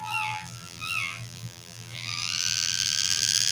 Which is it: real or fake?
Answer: fake